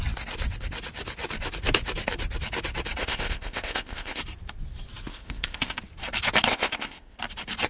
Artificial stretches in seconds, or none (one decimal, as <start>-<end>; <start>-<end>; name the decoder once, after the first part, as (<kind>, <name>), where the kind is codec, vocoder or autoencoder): 3.0-4.2 (codec, ZipCodec); 5.1-5.8; 6.5-7.2